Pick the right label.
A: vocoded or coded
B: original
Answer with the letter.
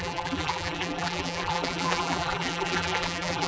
A